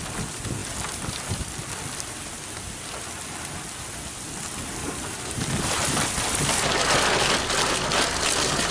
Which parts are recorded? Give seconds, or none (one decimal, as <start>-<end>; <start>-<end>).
0.0-4.8; 6.1-8.7